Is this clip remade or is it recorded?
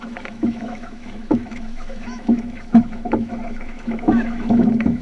remade